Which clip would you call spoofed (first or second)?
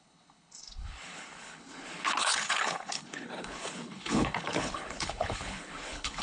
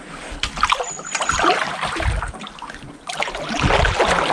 first